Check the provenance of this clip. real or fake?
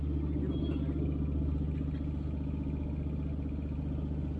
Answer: real